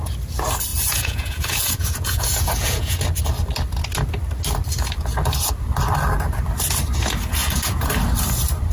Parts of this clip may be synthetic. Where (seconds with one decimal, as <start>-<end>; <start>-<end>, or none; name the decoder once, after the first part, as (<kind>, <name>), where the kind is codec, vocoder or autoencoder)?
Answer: 0.7-3.0 (vocoder, Vocos); 7.4-7.9